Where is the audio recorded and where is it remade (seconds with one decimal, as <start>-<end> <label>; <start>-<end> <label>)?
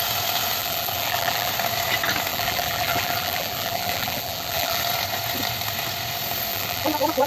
0.0-0.6 recorded; 0.6-1.5 remade; 1.5-2.3 recorded; 2.3-4.8 remade; 4.8-6.5 recorded; 6.5-7.3 remade